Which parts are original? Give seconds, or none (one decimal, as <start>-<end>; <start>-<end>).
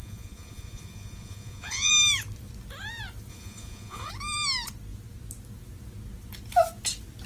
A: 1.9-3.3; 4.1-7.3